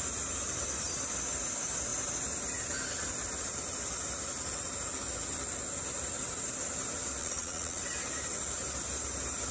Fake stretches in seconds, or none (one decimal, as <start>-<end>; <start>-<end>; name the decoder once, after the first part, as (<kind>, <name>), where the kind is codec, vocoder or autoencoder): 7.2-7.8 (vocoder, Vocos)